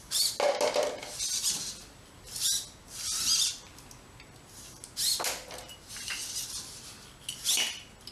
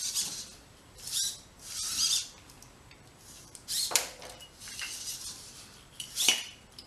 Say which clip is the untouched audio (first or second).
first